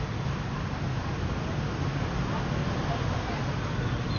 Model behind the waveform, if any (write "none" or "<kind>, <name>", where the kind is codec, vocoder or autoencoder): none